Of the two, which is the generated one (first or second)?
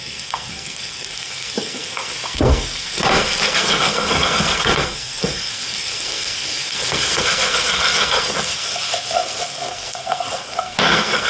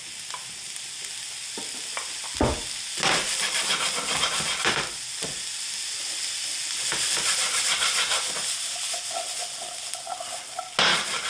first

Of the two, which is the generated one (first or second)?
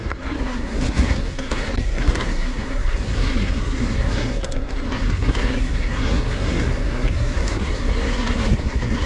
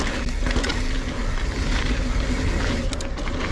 first